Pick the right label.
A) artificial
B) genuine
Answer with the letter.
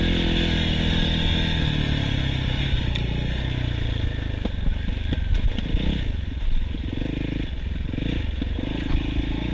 B